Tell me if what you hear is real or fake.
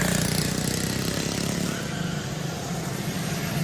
real